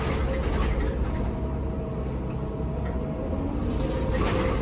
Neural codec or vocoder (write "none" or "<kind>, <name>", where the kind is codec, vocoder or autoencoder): none